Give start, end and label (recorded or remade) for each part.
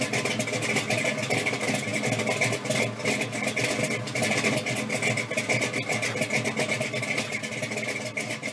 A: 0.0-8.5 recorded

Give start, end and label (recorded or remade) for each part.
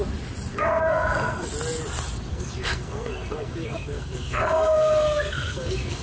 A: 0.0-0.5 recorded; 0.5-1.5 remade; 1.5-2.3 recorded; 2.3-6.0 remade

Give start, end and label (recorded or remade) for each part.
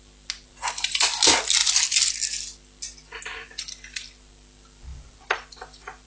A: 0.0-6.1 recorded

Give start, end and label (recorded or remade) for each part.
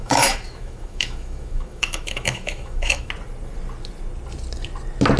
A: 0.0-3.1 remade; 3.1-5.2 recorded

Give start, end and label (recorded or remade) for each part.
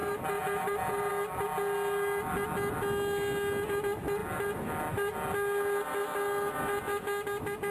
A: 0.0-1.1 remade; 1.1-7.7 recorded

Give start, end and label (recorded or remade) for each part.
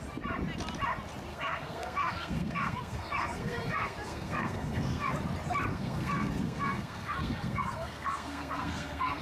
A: 0.0-1.3 recorded; 1.3-5.1 remade; 5.1-5.7 recorded; 5.7-9.2 remade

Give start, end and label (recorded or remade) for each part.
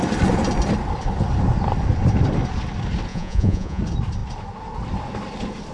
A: 0.0-3.1 recorded; 3.1-3.8 remade; 3.8-5.7 recorded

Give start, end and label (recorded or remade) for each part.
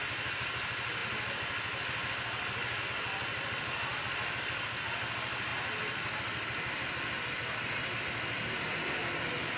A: 0.0-9.6 recorded